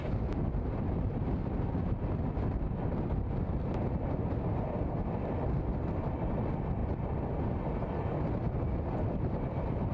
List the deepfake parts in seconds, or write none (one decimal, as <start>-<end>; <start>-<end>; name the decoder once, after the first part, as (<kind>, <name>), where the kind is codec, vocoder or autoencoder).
none